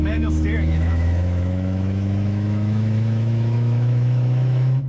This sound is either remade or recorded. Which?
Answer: remade